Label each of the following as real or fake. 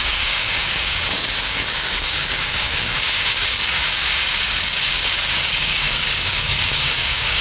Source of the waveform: fake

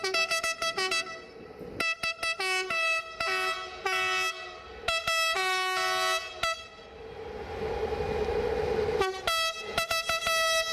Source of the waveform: real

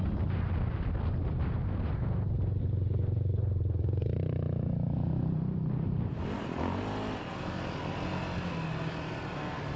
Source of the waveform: real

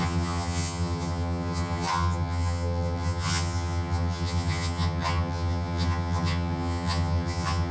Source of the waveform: fake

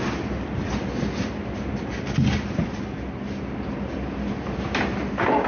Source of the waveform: real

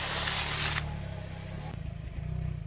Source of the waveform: real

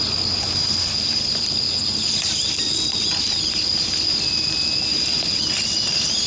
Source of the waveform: real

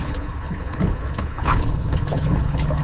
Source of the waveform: fake